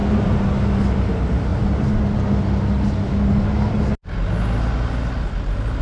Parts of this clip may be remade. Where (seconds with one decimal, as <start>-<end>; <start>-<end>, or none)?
none

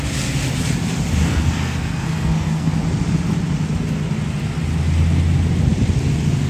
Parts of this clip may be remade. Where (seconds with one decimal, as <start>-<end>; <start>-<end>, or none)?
1.2-2.7

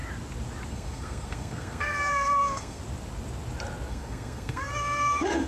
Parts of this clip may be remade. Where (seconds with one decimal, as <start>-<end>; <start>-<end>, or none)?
0.7-2.8; 3.9-5.5

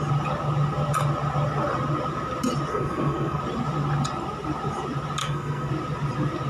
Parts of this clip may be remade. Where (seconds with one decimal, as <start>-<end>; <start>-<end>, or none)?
2.7-3.4; 5.2-5.7

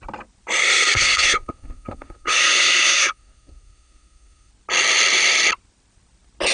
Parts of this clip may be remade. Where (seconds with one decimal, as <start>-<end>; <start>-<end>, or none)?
0.6-4.5

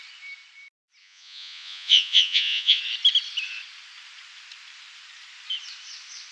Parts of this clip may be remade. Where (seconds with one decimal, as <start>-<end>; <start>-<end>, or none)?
1.0-2.8